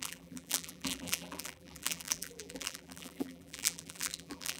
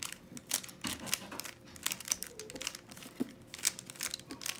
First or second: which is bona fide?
second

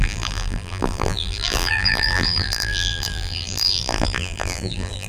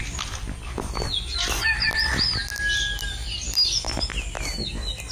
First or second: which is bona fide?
second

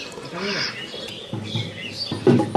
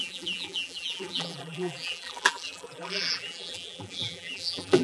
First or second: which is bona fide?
first